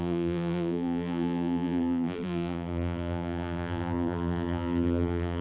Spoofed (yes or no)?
yes